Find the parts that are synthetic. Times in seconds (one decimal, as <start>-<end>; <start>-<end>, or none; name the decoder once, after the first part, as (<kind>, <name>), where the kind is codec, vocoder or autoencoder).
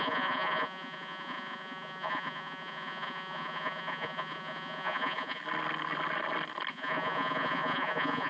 0.0-5.4 (vocoder, Vocos); 6.7-8.3